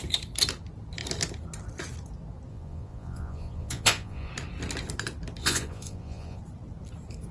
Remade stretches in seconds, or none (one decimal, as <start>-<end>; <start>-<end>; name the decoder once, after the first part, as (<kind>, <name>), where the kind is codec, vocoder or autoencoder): 2.5-4.3 (vocoder, Vocos); 5.4-6.4